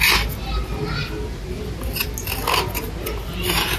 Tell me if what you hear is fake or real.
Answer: real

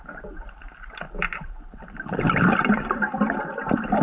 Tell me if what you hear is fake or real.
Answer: fake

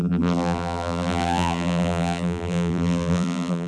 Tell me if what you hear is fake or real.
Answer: fake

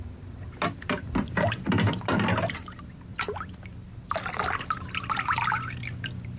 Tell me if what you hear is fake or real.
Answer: fake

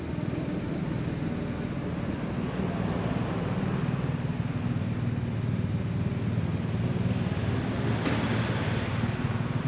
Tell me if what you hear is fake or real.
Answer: real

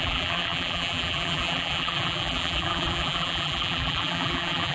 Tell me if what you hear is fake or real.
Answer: fake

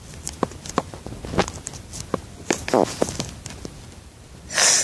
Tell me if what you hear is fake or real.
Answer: fake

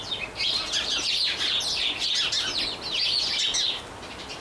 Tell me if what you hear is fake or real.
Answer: real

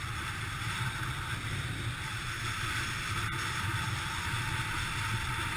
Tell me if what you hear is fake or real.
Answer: real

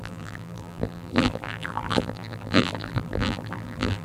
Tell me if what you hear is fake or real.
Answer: fake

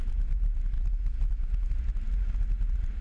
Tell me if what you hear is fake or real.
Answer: real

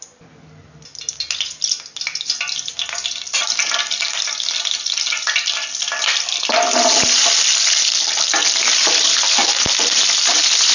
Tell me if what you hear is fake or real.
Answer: fake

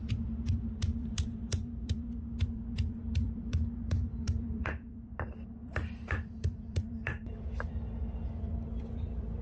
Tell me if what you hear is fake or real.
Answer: fake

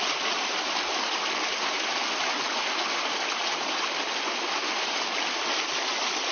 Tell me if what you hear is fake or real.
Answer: real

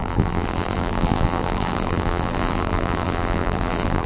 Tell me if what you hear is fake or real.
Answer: fake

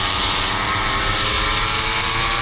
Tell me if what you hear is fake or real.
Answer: fake